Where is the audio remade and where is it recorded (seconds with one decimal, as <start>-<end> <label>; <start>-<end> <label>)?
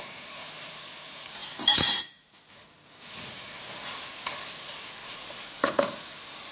0.0-5.0 recorded; 5.0-5.6 remade; 5.6-6.5 recorded